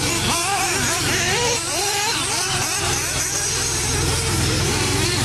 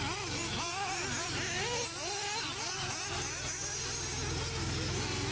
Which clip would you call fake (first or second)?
first